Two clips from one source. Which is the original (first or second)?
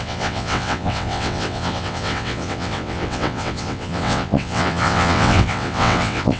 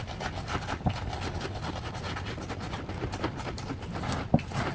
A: second